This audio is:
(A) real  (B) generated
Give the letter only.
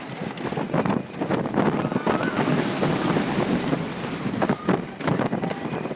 A